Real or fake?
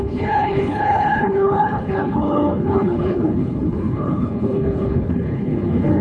fake